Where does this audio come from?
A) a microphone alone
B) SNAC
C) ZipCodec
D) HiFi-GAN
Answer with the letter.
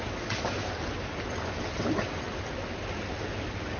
A